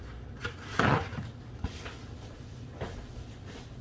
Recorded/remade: recorded